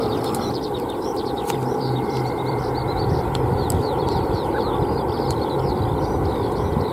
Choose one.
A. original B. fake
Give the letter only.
B